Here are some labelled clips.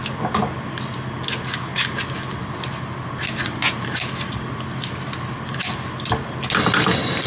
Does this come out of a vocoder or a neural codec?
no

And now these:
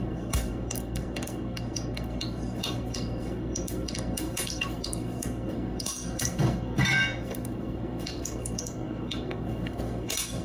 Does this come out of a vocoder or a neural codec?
yes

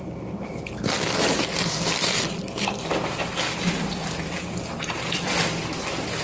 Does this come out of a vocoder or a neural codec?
no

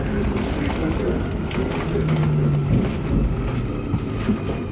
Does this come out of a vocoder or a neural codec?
no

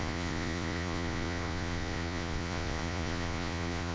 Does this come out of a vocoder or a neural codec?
yes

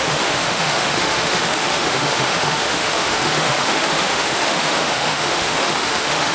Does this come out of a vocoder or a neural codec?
yes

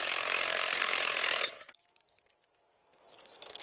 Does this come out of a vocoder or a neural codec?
yes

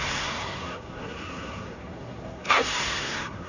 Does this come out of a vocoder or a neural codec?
yes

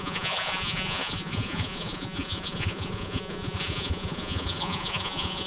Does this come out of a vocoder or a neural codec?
yes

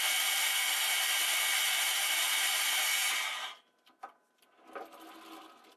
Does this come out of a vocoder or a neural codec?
no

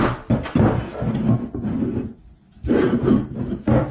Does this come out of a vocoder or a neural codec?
no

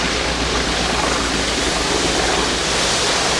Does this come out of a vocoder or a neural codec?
no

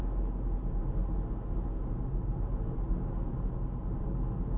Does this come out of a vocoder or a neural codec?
no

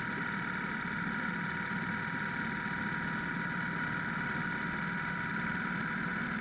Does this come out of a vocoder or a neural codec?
no